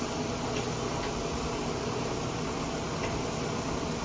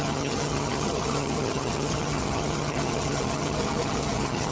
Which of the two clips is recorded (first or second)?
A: first